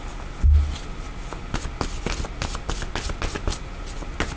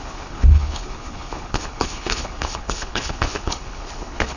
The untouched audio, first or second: first